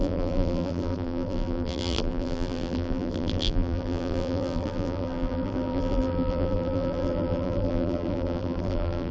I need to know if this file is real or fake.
fake